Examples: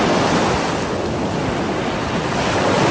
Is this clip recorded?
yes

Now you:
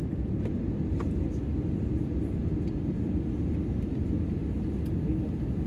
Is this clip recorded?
yes